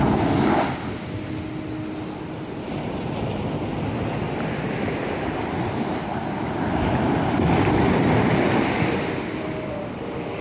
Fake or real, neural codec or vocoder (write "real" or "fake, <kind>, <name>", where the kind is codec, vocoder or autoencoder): real